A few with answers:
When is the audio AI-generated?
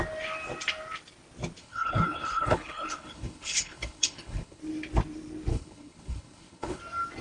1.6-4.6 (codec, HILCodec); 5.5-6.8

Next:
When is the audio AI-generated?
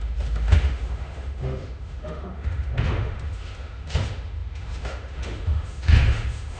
0.0-6.6 (autoencoder, DAC-VAE)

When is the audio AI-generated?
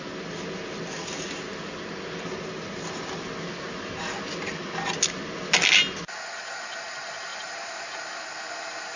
7.3-8.1 (vocoder, BigVGAN v2)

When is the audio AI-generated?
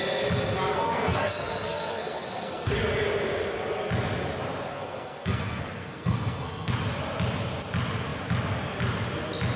0.7-2.7 (codec, SNAC); 4.7-6.7